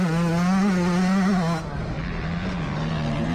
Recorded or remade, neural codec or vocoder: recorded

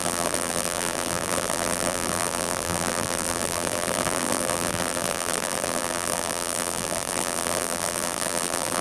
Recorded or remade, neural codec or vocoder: remade, vocoder, BigVGAN v2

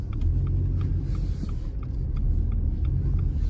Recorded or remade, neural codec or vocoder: recorded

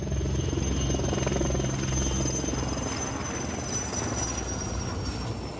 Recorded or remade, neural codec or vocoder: recorded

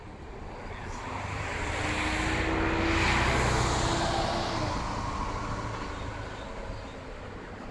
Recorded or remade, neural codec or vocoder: recorded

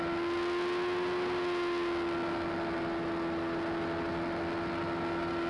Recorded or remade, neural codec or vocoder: recorded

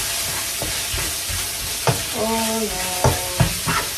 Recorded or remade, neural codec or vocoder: recorded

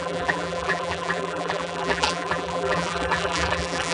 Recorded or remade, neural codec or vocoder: remade, vocoder, BigVGAN v2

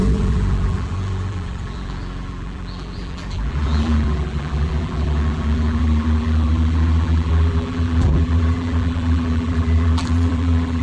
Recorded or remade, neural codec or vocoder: remade, vocoder, BigVGAN v2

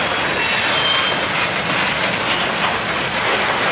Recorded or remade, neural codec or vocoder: recorded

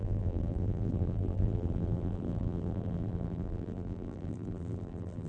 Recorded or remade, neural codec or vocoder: remade, vocoder, BigVGAN v2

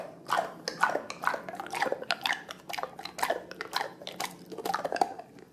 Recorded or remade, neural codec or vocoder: recorded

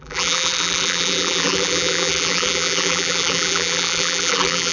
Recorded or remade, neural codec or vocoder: remade, vocoder, BigVGAN v2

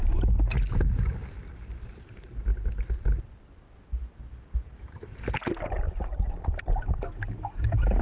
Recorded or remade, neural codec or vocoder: recorded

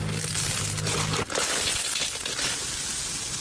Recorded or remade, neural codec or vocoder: recorded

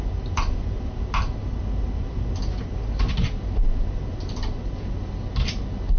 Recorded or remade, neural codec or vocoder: recorded